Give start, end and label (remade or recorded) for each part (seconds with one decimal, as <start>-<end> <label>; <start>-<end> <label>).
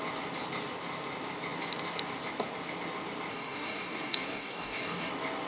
0.0-3.3 recorded; 3.3-5.1 remade; 5.1-5.5 recorded